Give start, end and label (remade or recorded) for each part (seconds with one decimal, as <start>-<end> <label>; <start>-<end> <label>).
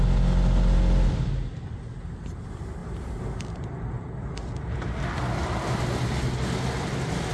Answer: 0.0-7.3 recorded